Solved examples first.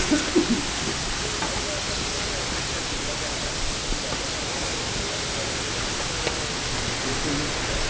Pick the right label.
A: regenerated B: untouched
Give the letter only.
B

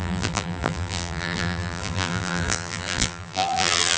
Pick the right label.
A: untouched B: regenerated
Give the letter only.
B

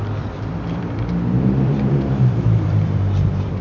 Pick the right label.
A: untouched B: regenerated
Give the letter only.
B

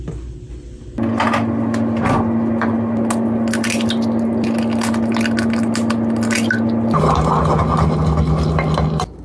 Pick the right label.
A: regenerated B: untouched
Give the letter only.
B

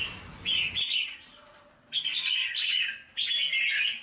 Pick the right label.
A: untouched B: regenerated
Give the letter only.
A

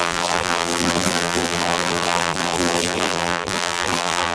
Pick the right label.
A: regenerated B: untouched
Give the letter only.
A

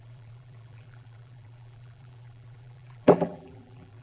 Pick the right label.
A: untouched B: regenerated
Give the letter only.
B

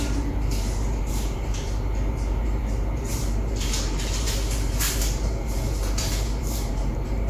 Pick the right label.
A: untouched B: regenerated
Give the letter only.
B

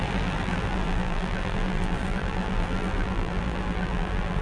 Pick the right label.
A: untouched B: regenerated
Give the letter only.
B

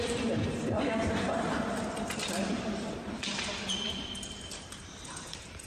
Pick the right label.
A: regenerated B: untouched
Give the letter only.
A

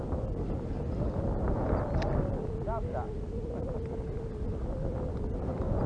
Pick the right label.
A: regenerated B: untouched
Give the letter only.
B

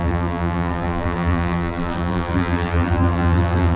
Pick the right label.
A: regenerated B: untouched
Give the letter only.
A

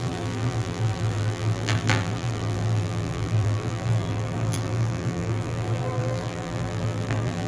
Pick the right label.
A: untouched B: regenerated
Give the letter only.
B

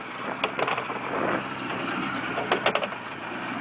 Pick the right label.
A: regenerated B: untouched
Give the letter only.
B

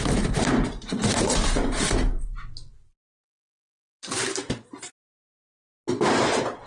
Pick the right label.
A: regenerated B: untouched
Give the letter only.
B